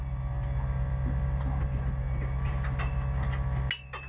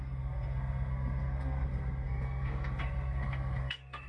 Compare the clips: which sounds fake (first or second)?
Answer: second